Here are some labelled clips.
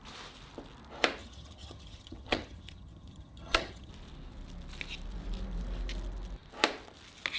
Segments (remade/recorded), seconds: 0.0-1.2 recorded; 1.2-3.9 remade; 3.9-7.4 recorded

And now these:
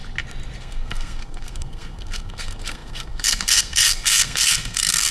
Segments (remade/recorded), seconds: 0.0-0.6 recorded; 0.6-5.1 remade

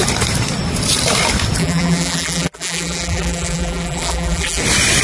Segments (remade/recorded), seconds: 0.0-1.6 recorded; 1.6-4.6 remade; 4.6-5.0 recorded

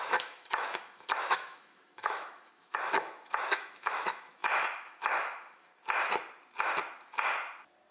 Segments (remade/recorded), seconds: 0.0-5.7 remade; 5.7-7.9 recorded